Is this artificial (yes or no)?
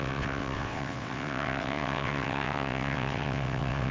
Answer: yes